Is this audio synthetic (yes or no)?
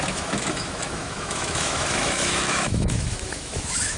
yes